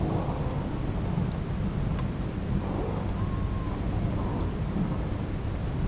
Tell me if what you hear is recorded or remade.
recorded